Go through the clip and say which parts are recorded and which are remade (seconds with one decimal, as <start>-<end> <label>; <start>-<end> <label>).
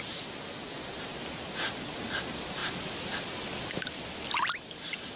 0.0-5.2 recorded